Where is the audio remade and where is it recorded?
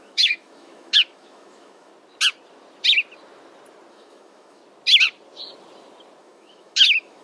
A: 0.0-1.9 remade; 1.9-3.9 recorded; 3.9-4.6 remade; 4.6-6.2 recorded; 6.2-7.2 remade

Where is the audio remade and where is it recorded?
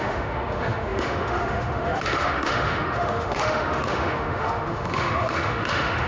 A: 0.0-6.1 remade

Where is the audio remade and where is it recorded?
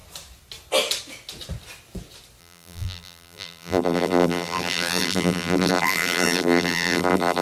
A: 0.0-2.4 recorded; 2.4-7.4 remade